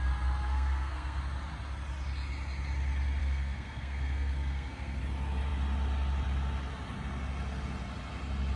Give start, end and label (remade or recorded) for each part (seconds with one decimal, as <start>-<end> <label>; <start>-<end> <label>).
0.0-0.4 recorded; 0.4-1.2 remade; 1.2-3.2 recorded; 3.2-5.0 remade; 5.0-8.6 recorded